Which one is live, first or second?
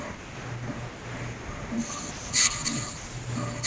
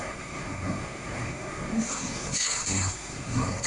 first